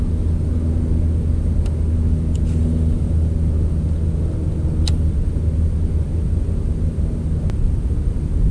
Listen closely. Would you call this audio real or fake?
real